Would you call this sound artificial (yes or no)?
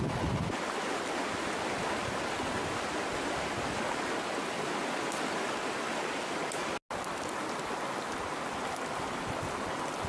no